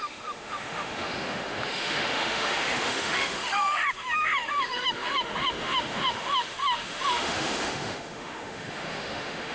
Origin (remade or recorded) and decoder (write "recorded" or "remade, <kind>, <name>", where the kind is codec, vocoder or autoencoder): remade, autoencoder, DAC-VAE